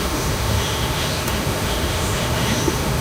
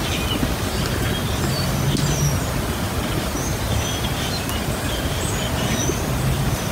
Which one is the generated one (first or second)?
first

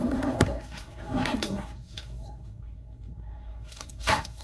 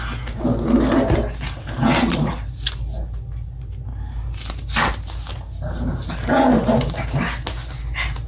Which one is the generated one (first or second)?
first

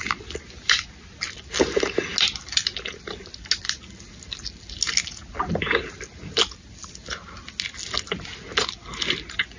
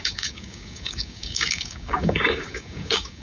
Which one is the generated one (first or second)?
second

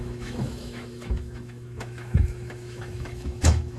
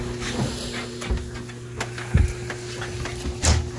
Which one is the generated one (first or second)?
first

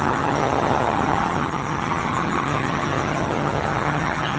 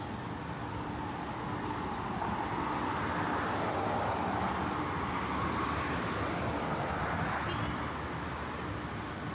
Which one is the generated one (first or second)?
first